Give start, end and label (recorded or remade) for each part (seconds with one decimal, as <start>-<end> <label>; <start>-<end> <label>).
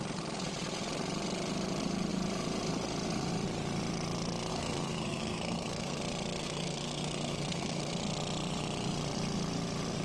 0.0-4.5 recorded; 4.5-6.0 remade; 6.0-6.4 recorded; 6.4-7.9 remade; 7.9-10.0 recorded